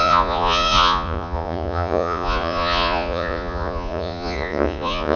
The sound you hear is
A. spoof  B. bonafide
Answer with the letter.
A